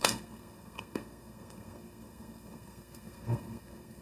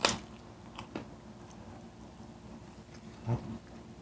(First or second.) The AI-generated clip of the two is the first